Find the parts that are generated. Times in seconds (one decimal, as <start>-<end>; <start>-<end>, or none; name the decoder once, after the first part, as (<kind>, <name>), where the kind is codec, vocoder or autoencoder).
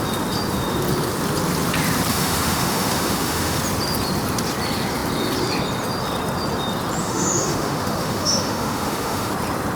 2.1-3.6 (autoencoder, DAC-VAE); 7.0-9.3